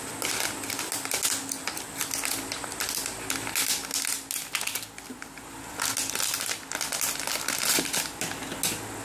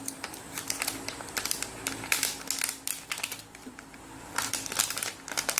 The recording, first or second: first